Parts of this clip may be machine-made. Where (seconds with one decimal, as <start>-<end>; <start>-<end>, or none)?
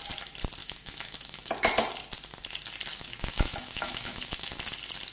0.6-1.5; 2.9-4.5